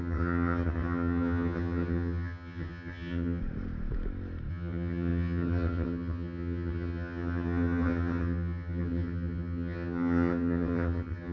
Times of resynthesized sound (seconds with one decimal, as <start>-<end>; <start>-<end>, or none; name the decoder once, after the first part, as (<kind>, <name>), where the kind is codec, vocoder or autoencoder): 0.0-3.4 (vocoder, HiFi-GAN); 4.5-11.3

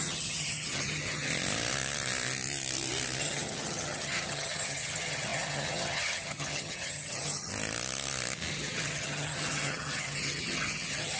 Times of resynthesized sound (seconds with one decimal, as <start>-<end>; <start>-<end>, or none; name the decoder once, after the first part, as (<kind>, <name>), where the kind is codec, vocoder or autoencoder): 0.0-1.3 (vocoder, HiFi-GAN); 3.2-7.5; 8.5-11.2

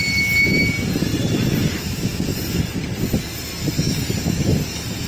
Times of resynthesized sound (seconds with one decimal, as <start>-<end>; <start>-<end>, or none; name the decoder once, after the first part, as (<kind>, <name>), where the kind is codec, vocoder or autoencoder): 1.1-3.5 (vocoder, BigVGAN v2)